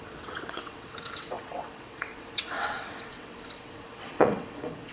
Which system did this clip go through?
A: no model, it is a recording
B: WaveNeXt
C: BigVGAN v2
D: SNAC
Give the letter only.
B